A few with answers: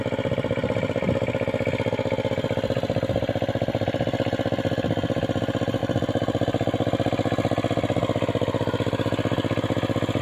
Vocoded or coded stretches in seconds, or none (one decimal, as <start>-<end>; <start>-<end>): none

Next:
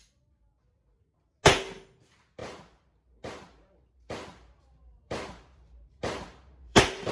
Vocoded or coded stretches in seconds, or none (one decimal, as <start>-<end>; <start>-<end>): 2.4-7.1

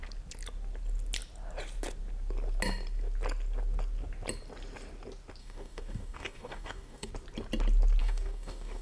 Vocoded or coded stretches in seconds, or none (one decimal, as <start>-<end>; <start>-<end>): 5.4-7.1; 8.0-8.8

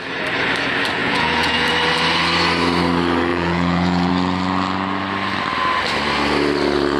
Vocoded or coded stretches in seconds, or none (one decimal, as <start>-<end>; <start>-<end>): 1.0-1.7; 3.3-4.1